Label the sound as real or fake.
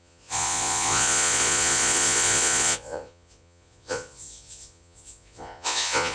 fake